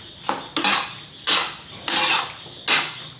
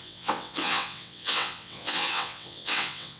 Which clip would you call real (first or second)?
first